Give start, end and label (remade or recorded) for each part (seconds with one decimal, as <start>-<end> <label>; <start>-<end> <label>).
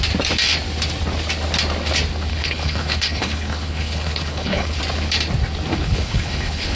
0.0-2.3 recorded; 2.3-4.8 remade; 4.8-5.7 recorded; 5.7-6.8 remade